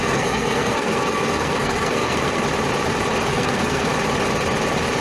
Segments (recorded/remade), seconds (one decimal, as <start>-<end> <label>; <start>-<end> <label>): 0.0-2.4 remade; 2.4-3.3 recorded; 3.3-3.9 remade; 3.9-5.0 recorded